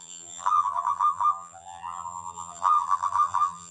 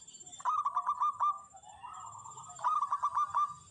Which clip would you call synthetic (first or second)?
first